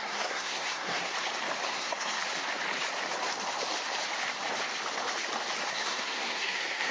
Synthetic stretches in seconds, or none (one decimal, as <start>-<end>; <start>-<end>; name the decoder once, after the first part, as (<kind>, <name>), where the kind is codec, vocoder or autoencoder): 0.0-1.1 (codec, SNAC); 1.7-2.2; 5.7-6.9